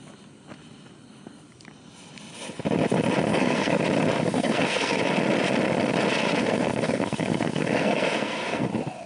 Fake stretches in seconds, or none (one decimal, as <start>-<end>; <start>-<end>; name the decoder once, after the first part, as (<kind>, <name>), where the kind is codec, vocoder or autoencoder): 3.3-3.8 (codec, SNAC); 4.3-5.0; 6.4-8.7